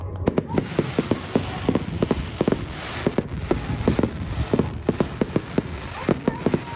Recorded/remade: recorded